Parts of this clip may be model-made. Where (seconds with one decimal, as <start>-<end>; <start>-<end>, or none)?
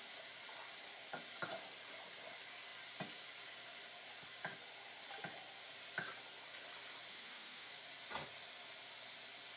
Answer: 7.1-7.7